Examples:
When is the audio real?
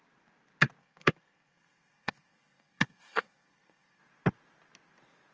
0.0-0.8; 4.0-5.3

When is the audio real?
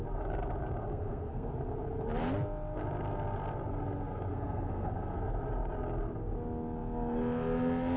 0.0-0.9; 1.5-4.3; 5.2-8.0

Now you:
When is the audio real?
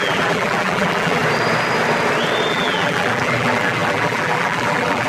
1.2-2.5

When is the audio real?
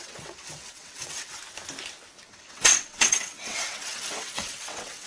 1.4-2.3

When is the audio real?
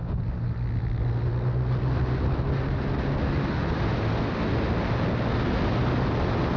0.0-6.6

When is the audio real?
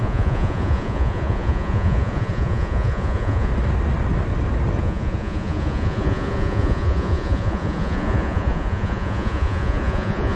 3.5-4.8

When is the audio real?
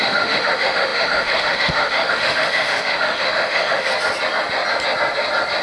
3.9-5.6